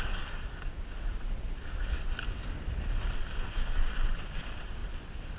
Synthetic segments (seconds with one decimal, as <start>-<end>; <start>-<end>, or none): none